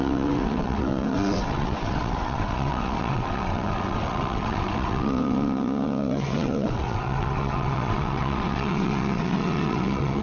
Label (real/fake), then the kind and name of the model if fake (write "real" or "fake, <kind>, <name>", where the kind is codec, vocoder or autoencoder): fake, vocoder, WaveNeXt